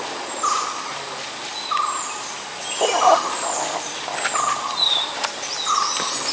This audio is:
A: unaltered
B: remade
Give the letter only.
A